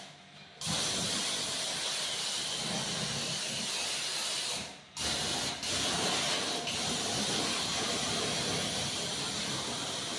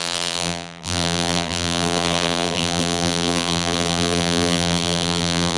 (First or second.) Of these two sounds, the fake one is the second